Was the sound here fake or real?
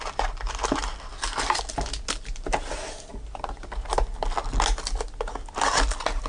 real